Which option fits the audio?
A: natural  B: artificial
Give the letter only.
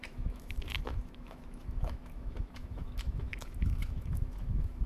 B